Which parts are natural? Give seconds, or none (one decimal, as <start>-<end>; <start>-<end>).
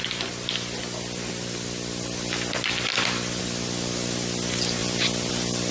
0.0-5.7